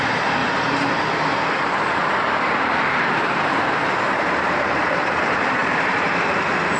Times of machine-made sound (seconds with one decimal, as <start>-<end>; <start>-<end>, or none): 0.0-0.4; 1.2-6.8